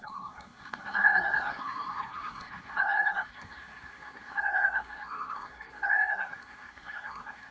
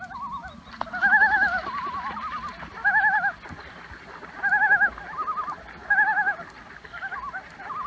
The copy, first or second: first